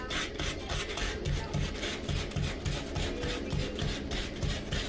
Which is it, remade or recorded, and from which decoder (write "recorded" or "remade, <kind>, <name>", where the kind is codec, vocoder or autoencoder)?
recorded